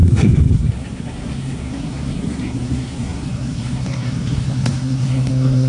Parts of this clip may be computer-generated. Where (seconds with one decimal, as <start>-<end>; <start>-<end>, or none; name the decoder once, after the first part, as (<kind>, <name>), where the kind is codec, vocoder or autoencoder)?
0.0-5.7 (codec, SNAC)